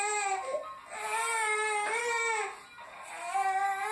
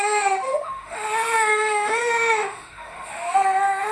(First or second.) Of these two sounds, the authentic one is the first